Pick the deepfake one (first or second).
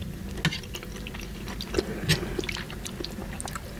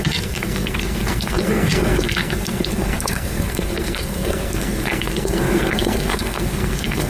second